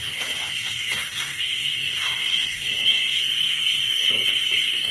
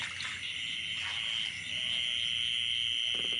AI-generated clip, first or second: first